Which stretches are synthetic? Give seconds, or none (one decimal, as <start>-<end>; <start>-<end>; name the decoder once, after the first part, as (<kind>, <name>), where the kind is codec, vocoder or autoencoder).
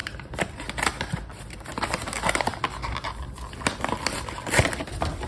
none